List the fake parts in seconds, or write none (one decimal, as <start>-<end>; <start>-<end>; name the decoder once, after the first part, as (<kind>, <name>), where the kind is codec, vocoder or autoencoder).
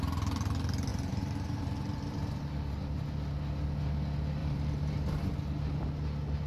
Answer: 0.9-2.1 (vocoder, BigVGAN v2); 4.4-4.9